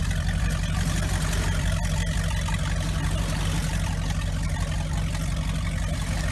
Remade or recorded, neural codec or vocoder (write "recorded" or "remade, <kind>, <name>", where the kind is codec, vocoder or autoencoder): recorded